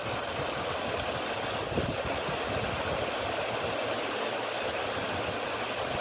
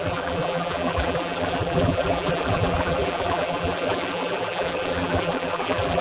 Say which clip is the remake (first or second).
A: second